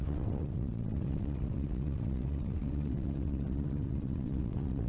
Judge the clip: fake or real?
fake